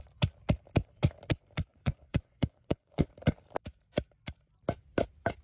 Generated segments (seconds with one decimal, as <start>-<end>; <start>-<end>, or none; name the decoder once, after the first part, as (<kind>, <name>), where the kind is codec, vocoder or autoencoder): 1.7-3.1 (vocoder, Vocos)